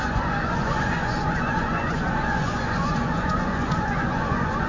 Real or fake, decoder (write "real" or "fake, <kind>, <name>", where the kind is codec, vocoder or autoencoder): fake, vocoder, Vocos